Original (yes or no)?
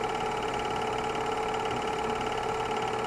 yes